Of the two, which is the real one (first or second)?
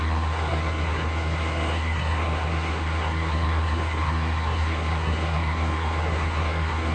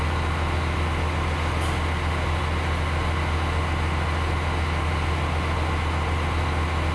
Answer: second